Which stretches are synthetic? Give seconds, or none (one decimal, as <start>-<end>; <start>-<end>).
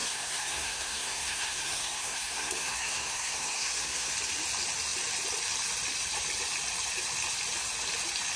0.0-4.1